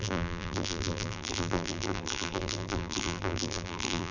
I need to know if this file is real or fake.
fake